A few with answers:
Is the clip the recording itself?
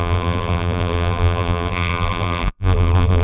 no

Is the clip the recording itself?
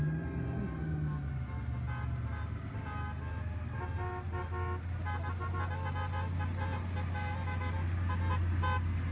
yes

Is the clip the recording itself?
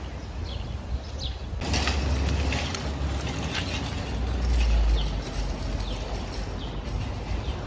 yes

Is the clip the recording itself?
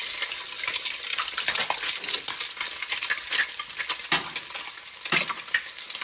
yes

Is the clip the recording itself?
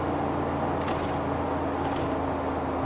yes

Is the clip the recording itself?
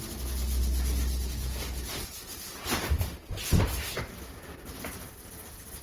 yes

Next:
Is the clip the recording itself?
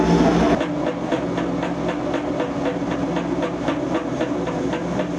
yes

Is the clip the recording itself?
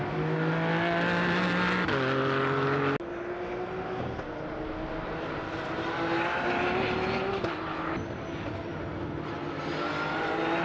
yes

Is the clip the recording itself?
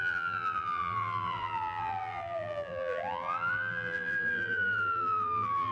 no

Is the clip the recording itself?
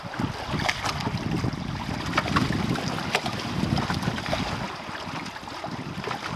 yes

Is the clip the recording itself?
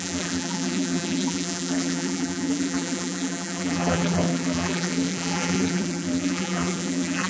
no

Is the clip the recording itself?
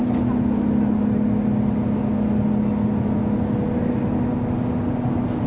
yes